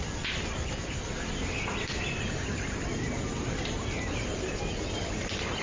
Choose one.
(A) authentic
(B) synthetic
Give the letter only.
A